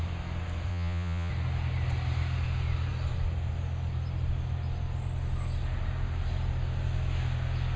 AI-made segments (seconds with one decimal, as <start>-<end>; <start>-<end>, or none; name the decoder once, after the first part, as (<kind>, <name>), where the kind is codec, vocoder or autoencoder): 0.7-1.3 (vocoder, Vocos)